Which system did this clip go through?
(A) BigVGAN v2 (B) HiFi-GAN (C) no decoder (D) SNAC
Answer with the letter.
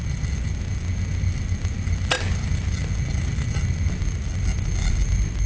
C